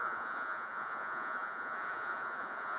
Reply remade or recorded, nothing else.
remade